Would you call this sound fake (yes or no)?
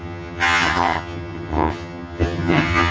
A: yes